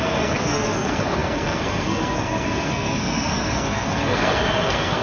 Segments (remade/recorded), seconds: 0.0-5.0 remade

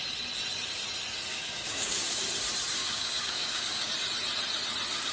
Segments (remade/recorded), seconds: 0.0-1.3 recorded; 1.3-2.2 remade; 2.2-2.8 recorded; 2.8-3.9 remade; 3.9-5.1 recorded

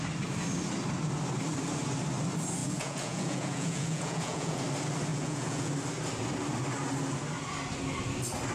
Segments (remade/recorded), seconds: 0.0-2.6 recorded; 2.6-4.6 remade; 4.6-5.1 recorded; 5.1-5.7 remade; 5.7-8.5 recorded

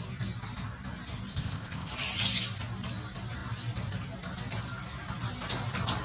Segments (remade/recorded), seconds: 0.0-1.3 recorded; 1.3-1.9 remade; 1.9-6.0 recorded